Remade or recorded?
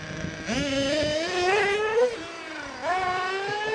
recorded